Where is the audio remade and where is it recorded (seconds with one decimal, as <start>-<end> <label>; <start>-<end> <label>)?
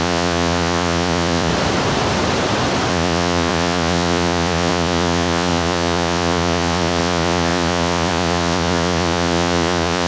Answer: 0.0-1.5 remade; 1.5-2.9 recorded; 2.9-10.1 remade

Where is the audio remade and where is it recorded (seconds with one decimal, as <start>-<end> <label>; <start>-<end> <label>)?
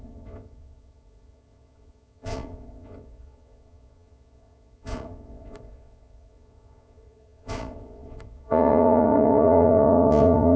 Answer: 0.0-10.6 remade